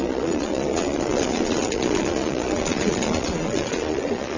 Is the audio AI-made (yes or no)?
yes